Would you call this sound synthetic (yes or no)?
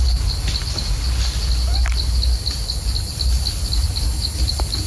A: no